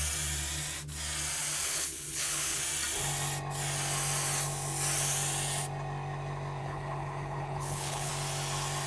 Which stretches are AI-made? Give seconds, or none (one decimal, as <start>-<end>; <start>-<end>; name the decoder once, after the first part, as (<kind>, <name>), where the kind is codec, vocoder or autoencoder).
1.6-2.6 (codec, HILCodec); 6.6-8.1